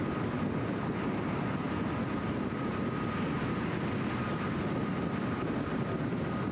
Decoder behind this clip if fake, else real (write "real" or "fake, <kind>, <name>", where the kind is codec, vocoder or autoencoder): real